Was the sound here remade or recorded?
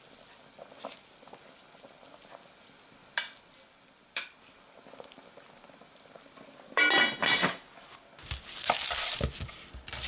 recorded